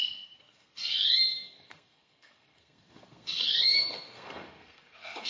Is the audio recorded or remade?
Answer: remade